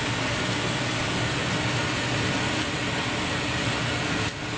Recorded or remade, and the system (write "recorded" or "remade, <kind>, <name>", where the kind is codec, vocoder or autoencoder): recorded